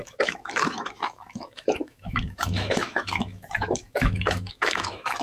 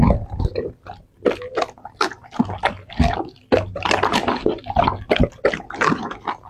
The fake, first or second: first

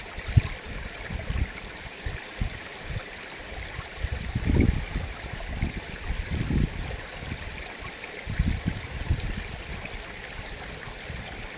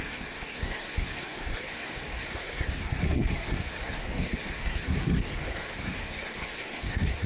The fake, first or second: second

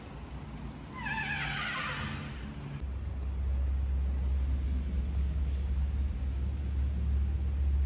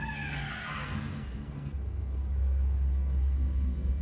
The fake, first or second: second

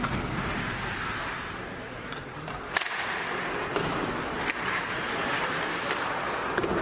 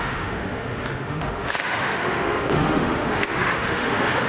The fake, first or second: second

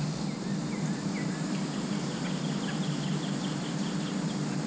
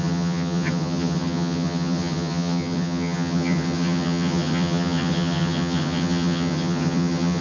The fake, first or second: second